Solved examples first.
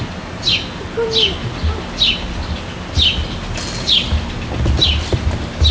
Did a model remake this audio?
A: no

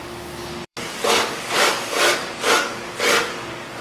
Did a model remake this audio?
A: yes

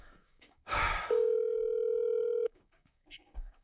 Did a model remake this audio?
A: yes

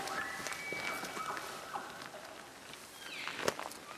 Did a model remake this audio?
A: no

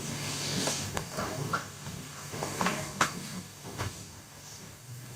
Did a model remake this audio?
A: yes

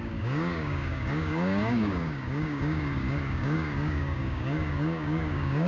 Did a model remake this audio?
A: yes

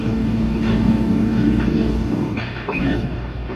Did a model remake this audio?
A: yes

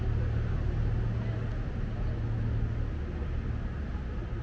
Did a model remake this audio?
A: no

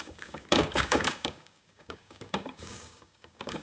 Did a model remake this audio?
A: yes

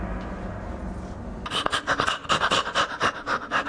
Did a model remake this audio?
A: no